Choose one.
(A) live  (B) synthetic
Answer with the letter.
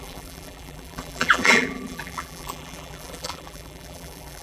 B